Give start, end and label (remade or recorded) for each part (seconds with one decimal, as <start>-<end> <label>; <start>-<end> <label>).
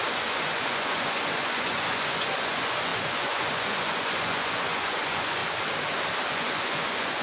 0.0-5.4 remade; 5.4-6.3 recorded; 6.3-7.2 remade